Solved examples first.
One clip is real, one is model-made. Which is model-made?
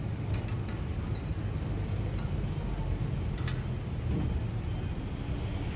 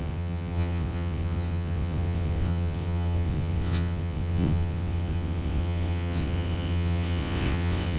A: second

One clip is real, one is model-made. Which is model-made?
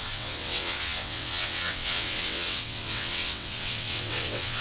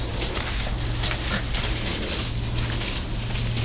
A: first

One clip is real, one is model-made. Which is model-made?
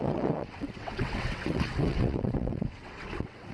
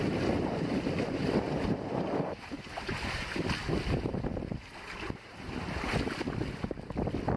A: first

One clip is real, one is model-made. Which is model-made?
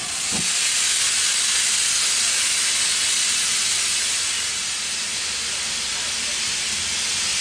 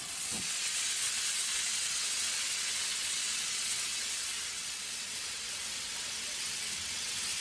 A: second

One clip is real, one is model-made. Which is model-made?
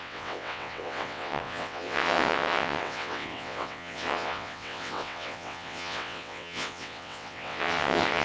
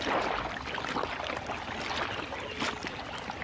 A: first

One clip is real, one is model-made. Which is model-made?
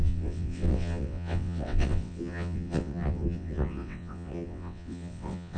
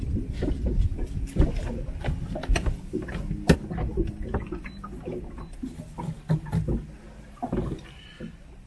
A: first